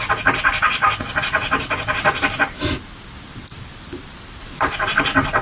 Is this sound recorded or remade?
recorded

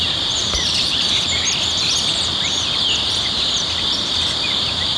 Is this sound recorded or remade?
recorded